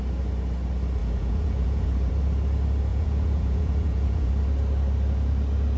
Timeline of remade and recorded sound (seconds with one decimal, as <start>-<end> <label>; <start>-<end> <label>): 0.0-1.0 recorded; 1.0-2.1 remade; 2.1-2.9 recorded; 2.9-4.3 remade; 4.3-5.8 recorded